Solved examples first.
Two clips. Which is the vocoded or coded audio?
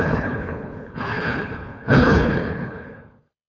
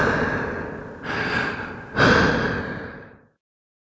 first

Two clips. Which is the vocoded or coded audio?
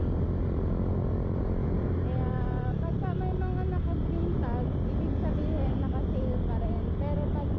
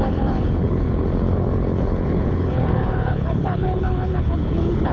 second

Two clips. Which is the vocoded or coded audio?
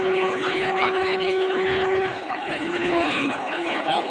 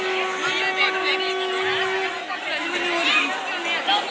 first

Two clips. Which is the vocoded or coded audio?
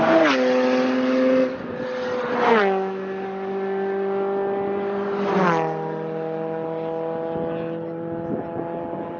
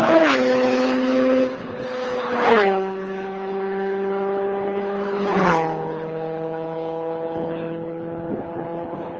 second